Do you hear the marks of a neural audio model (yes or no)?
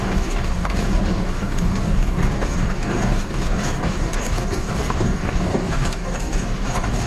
yes